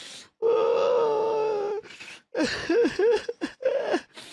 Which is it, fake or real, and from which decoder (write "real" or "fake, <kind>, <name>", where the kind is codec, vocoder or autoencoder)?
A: real